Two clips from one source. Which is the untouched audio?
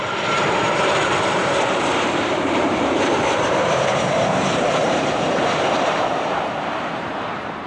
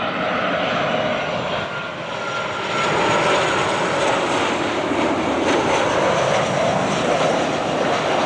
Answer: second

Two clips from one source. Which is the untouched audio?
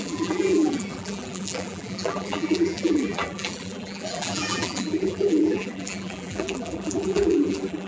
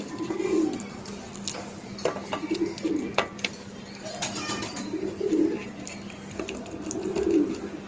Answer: second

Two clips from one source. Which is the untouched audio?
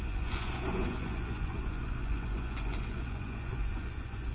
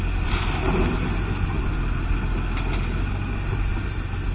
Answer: second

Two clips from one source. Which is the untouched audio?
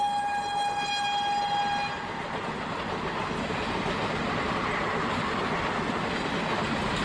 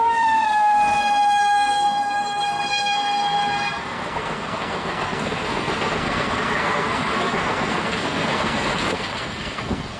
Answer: first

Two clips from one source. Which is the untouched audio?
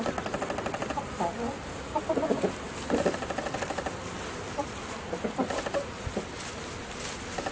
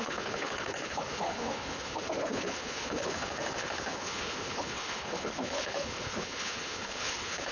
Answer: first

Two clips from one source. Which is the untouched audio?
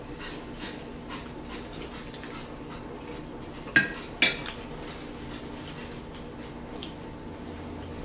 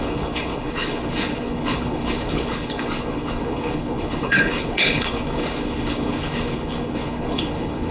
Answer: first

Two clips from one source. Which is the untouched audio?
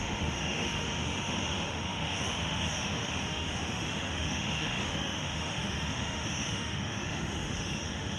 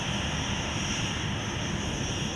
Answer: second